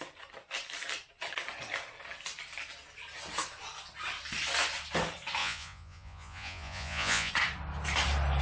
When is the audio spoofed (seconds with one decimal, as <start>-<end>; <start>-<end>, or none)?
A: 5.4-7.3